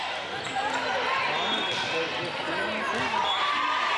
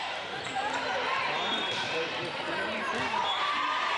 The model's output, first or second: second